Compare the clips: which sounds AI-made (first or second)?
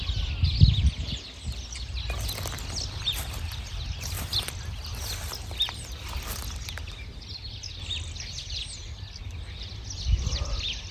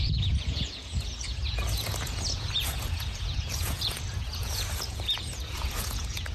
second